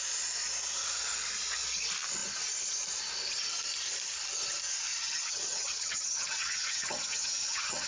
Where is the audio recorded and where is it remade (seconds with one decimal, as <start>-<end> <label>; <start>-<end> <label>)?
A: 0.0-4.9 recorded; 4.9-7.9 remade